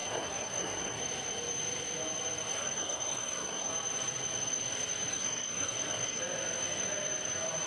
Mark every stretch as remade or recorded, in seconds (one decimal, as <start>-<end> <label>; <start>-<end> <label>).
0.0-1.0 remade; 1.0-2.5 recorded; 2.5-3.7 remade; 3.7-5.1 recorded; 5.1-6.2 remade; 6.2-7.7 recorded